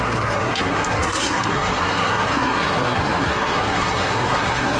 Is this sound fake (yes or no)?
yes